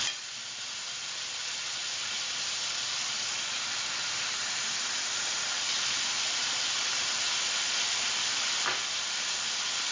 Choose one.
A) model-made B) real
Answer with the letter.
A